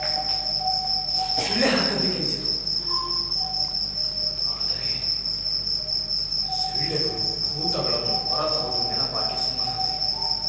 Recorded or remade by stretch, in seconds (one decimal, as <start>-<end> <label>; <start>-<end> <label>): 0.0-10.5 recorded